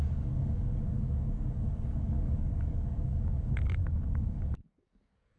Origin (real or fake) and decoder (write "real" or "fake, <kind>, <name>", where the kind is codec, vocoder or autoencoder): fake, codec, DAC